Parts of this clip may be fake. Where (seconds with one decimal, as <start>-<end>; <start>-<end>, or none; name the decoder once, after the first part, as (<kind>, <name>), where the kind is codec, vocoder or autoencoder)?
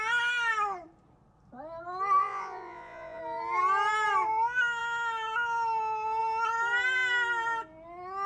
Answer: 2.2-3.2 (vocoder, Vocos)